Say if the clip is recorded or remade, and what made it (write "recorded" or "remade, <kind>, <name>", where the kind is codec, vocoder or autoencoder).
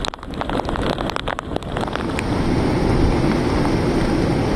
recorded